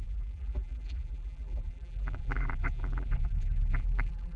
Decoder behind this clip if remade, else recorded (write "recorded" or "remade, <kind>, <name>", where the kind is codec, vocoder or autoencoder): remade, vocoder, BigVGAN v2